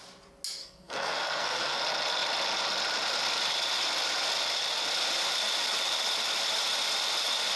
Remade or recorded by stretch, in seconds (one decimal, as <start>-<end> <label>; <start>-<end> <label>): 0.0-0.6 recorded; 0.6-1.8 remade; 1.8-7.6 recorded